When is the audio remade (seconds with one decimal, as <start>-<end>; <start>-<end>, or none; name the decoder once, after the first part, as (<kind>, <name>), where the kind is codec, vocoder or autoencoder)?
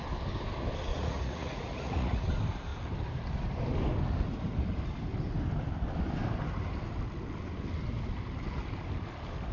0.9-2.3 (vocoder, Vocos)